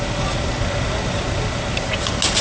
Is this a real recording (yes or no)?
yes